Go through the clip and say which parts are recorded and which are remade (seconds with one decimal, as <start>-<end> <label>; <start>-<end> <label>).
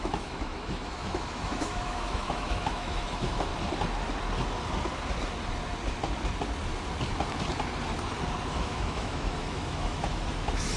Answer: 0.0-3.5 remade; 3.5-8.5 recorded; 8.5-10.8 remade